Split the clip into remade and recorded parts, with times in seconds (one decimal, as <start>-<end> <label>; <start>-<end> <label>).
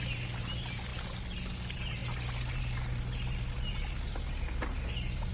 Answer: 0.0-5.3 recorded